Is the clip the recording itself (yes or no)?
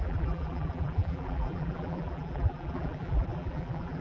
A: no